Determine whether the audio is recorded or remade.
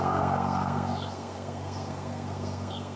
remade